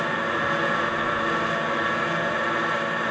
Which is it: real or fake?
real